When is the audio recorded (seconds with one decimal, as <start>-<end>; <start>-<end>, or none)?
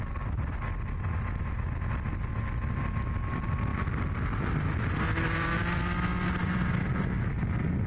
0.0-3.7; 5.6-6.4; 6.9-7.9